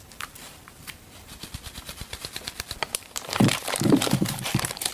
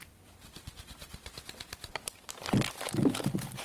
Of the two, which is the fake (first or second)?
first